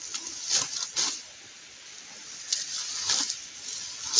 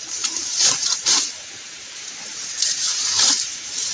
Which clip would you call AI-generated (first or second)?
second